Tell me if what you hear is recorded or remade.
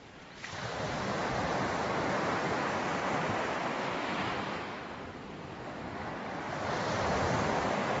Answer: recorded